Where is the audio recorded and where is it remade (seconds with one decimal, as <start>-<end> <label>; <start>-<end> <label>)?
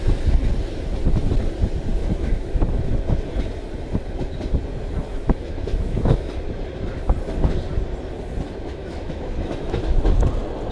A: 0.0-2.0 recorded; 2.0-3.0 remade; 3.0-5.1 recorded; 5.1-6.3 remade; 6.3-8.8 recorded; 8.8-10.2 remade; 10.2-10.7 recorded